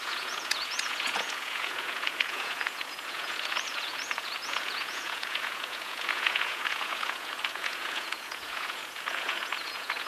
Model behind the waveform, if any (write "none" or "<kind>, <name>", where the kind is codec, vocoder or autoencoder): vocoder, Vocos